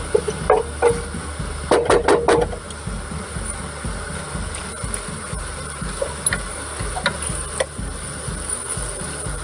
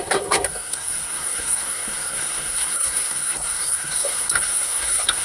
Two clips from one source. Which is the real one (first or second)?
first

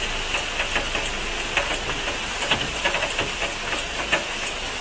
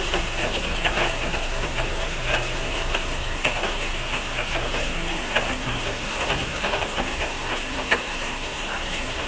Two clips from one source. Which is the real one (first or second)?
first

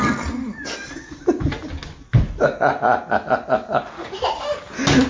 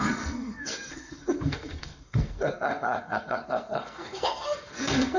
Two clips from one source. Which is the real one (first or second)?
first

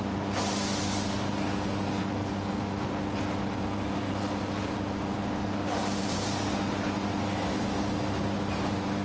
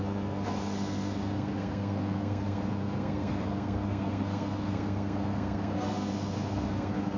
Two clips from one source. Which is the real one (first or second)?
first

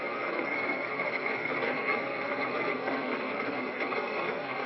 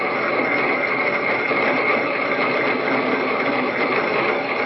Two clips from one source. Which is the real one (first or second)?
second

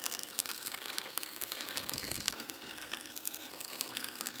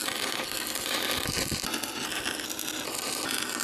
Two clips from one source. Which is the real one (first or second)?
second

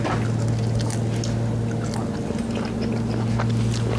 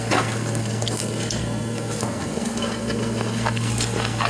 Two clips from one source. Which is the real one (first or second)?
first